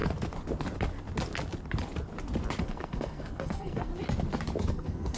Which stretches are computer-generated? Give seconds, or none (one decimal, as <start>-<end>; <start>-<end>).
2.6-3.9; 4.7-5.2